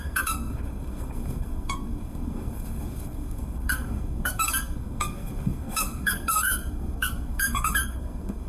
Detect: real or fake fake